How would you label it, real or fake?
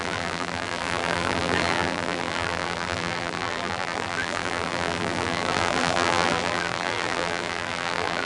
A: fake